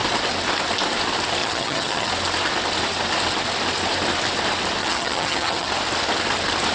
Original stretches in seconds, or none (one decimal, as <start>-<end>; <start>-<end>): 0.0-1.4; 2.1-4.8; 5.7-6.7